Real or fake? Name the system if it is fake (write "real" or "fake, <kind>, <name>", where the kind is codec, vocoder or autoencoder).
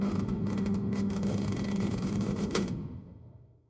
fake, autoencoder, DAC-VAE